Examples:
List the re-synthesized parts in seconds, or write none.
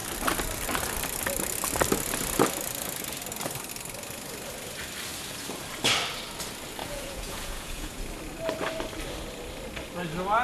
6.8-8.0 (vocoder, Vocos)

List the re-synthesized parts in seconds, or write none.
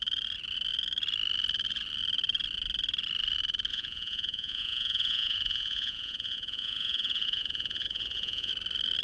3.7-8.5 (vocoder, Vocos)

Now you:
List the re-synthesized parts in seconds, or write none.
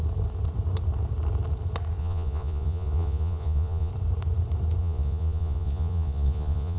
2.0-3.9 (vocoder, Vocos); 4.8-6.8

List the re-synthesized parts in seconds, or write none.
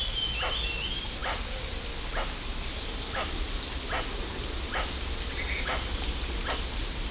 none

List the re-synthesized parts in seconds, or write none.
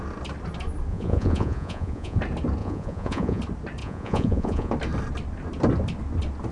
0.9-2.2 (vocoder, Vocos); 2.6-3.4; 3.8-4.7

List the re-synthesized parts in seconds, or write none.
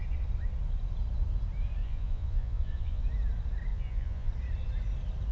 1.8-3.0 (vocoder, Vocos); 3.7-4.3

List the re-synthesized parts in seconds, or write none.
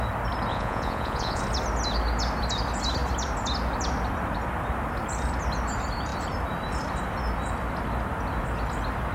0.5-1.4 (vocoder, Vocos)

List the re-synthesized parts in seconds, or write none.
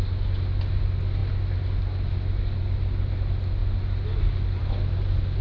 none